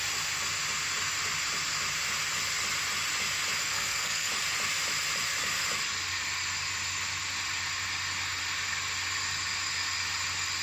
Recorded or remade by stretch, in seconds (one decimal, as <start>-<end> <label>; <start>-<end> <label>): 0.0-3.6 recorded; 3.6-4.3 remade; 4.3-10.6 recorded